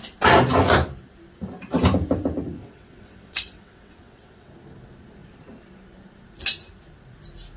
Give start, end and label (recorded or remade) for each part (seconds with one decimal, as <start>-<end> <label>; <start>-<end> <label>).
0.0-2.6 recorded; 2.6-4.5 remade; 4.5-7.6 recorded